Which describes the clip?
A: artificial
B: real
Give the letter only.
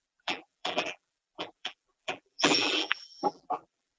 A